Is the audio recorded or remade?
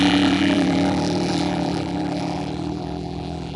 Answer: remade